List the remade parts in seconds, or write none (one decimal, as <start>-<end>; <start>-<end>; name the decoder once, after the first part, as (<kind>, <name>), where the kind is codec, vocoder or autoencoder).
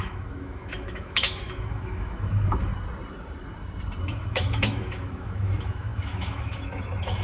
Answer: 0.0-2.7 (autoencoder, DAC-VAE); 4.0-7.2